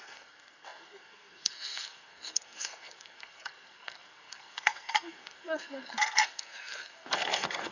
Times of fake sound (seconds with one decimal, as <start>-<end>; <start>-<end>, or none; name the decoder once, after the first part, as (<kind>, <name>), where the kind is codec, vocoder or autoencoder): 0.0-7.7 (codec, SNAC)